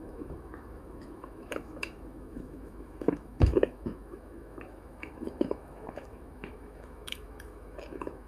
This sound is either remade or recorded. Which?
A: remade